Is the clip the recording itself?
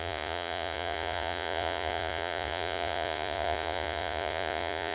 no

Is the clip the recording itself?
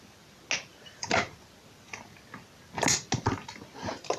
yes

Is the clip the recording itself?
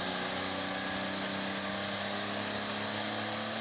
yes